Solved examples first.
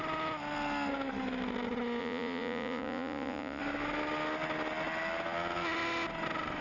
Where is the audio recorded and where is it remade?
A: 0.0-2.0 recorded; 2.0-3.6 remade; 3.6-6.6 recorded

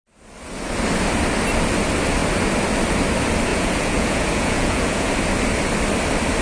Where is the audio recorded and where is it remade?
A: 0.0-3.5 recorded; 3.5-5.1 remade; 5.1-6.4 recorded

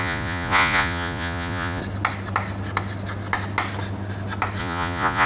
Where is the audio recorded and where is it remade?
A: 0.0-1.8 remade; 1.8-4.6 recorded; 4.6-5.3 remade